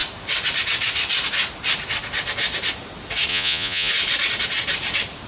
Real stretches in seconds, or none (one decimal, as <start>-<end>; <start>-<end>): 0.0-3.3; 3.9-5.3